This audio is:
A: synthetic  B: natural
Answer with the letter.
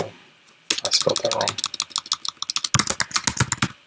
B